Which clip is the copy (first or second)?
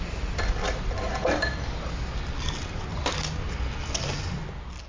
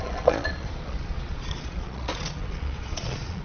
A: second